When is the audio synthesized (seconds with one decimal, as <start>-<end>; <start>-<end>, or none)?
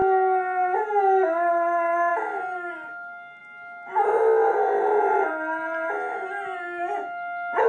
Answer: none